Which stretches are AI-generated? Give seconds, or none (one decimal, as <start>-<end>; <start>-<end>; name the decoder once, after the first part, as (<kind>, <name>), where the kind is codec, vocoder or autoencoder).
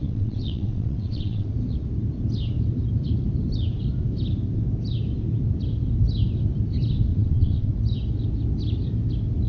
0.0-1.5 (vocoder, WaveNeXt); 7.1-7.7